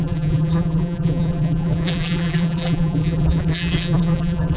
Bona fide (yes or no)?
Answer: no